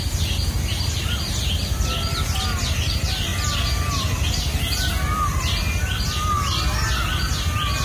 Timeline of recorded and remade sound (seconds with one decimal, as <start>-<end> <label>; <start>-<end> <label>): 0.0-7.8 recorded

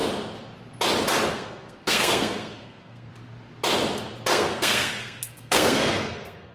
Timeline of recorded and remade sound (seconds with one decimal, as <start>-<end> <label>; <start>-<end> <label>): 0.0-1.3 recorded; 1.3-3.1 remade; 3.1-4.3 recorded; 4.3-6.5 remade

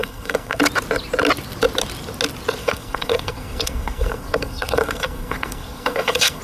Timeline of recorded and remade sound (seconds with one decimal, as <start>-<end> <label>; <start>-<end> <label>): 0.0-0.6 remade; 0.6-2.6 recorded; 2.6-6.4 remade

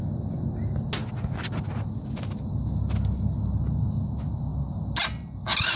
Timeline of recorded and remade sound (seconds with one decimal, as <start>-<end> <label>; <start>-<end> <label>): 0.0-5.8 recorded

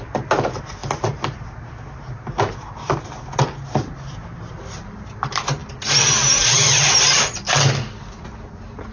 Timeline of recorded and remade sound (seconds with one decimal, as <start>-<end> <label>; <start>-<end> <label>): 0.0-8.9 recorded

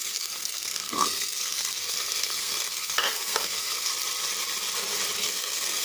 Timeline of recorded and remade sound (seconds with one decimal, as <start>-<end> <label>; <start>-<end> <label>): 0.0-3.9 remade; 3.9-5.2 recorded; 5.2-5.8 remade

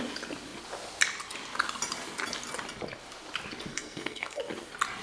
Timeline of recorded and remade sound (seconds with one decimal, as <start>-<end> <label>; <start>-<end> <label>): 0.0-3.7 recorded; 3.7-4.4 remade; 4.4-5.0 recorded

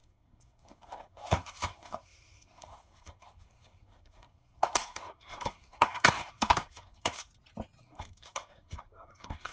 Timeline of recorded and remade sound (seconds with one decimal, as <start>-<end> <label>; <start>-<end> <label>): 0.0-7.3 remade; 7.3-7.8 recorded; 7.8-9.5 remade